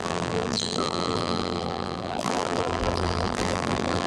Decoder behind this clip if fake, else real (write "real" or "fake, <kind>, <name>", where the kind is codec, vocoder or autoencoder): fake, vocoder, BigVGAN v2